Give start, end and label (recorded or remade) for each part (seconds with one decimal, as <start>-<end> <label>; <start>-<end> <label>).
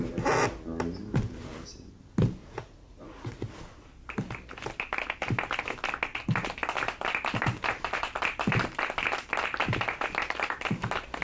0.0-2.4 recorded; 2.4-3.5 remade; 3.5-11.2 recorded